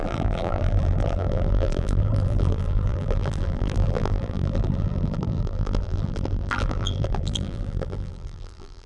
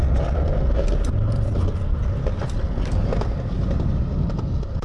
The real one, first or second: second